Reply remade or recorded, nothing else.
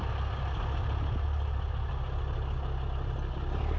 recorded